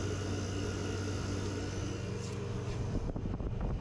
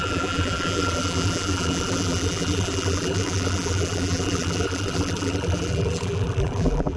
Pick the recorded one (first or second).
first